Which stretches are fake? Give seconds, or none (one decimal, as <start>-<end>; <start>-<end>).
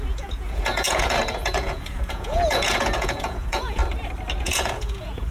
0.0-3.8; 4.4-5.3